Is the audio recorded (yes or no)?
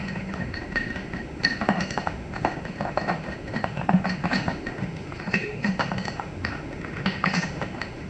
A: no